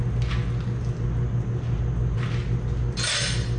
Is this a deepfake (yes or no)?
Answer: no